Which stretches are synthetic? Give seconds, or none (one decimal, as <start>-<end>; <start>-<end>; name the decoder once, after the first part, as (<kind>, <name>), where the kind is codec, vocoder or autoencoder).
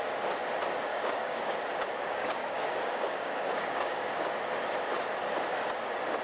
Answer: 0.9-1.6 (codec, DAC); 2.2-4.3